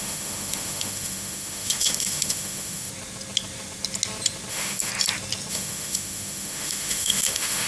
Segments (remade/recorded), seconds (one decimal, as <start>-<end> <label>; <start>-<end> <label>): 0.0-2.9 remade; 2.9-4.5 recorded; 4.5-4.9 remade; 4.9-5.5 recorded; 5.5-7.7 remade